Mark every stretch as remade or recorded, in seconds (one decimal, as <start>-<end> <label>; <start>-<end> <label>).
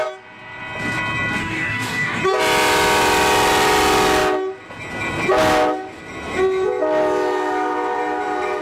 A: 0.0-1.4 recorded; 1.4-2.2 remade; 2.2-8.6 recorded